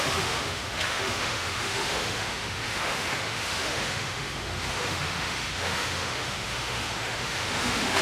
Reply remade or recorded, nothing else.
remade